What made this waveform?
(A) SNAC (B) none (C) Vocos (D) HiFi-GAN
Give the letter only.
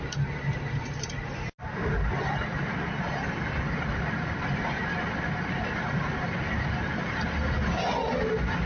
B